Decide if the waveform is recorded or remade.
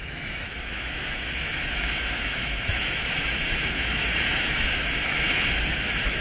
remade